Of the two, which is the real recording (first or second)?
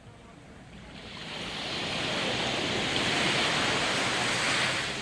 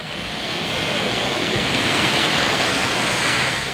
first